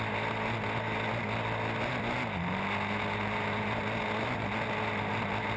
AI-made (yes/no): no